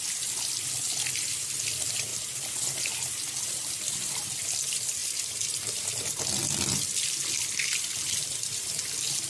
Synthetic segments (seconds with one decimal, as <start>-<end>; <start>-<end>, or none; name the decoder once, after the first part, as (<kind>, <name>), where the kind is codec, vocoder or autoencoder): none